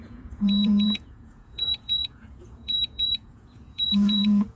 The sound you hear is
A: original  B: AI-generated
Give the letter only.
B